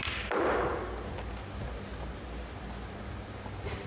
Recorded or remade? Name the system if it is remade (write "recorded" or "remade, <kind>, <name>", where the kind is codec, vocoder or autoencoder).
recorded